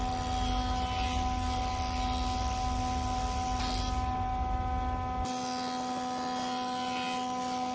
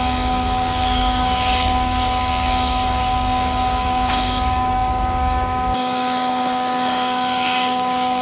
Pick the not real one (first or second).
second